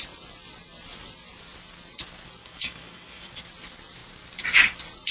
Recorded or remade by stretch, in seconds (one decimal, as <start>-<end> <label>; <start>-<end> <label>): 0.0-2.4 recorded; 2.4-3.3 remade; 3.3-5.1 recorded